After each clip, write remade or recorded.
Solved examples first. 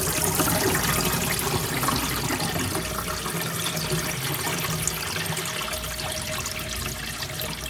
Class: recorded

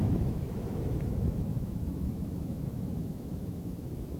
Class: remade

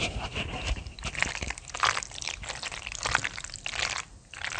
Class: recorded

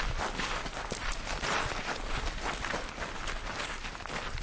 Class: recorded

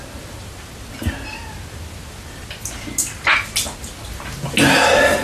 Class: recorded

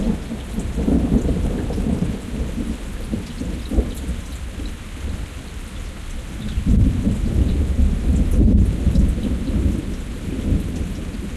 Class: recorded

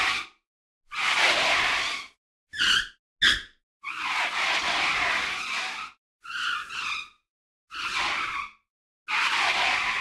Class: recorded